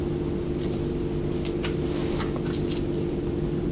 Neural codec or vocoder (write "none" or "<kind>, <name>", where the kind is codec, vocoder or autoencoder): none